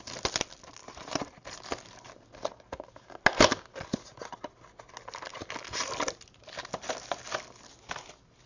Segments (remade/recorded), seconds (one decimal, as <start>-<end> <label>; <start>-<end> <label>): 0.0-0.8 recorded; 0.8-1.5 remade; 1.5-8.5 recorded